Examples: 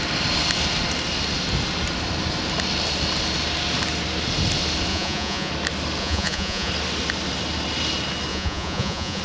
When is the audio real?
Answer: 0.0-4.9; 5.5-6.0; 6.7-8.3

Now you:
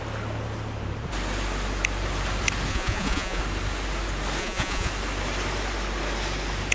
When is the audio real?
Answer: 0.0-2.7; 3.4-4.4; 4.9-6.7

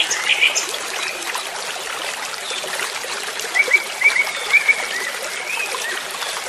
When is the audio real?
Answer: 0.0-2.4; 3.9-6.5

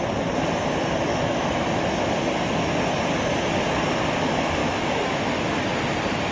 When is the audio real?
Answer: 0.0-1.1; 1.8-4.6; 5.6-6.3

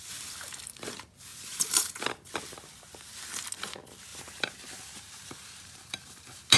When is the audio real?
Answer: 0.0-1.3; 2.0-4.1

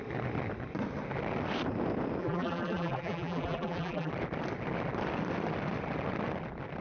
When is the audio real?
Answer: 0.0-2.2; 4.1-6.8

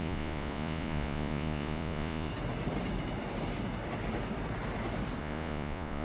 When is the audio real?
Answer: 2.3-5.2